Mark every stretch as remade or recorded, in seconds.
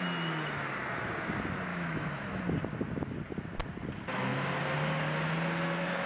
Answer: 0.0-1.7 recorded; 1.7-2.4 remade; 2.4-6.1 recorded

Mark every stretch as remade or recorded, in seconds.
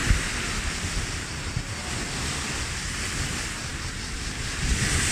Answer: 0.0-5.1 recorded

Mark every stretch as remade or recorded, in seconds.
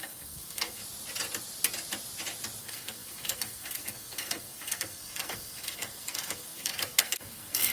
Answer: 0.0-0.8 remade; 0.8-2.6 recorded; 2.6-7.7 remade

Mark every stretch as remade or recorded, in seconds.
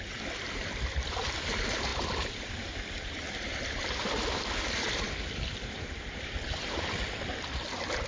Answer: 0.0-8.1 remade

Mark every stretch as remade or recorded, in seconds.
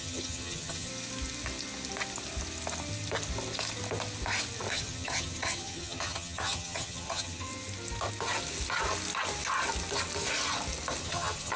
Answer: 0.0-0.9 remade; 0.9-4.7 recorded; 4.7-7.5 remade; 7.5-11.0 recorded; 11.0-11.6 remade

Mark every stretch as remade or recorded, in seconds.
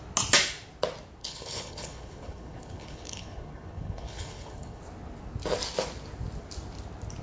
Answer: 0.0-1.2 recorded; 1.2-4.8 remade; 4.8-7.2 recorded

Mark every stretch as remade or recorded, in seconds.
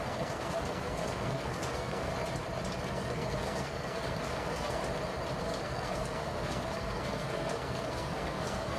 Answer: 0.0-2.1 remade; 2.1-2.9 recorded; 2.9-4.8 remade; 4.8-5.4 recorded; 5.4-8.8 remade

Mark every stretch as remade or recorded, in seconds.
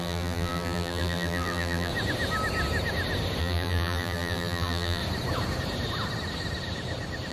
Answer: 0.0-1.9 remade; 1.9-3.4 recorded; 3.4-5.0 remade; 5.0-7.3 recorded